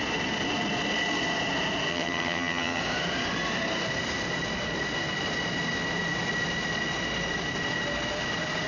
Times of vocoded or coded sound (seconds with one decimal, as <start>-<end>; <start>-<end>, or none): 1.9-2.8